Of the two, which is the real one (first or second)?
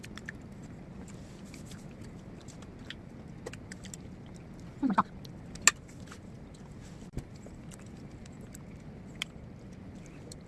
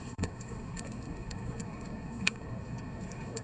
first